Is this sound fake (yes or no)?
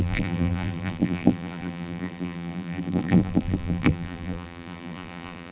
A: yes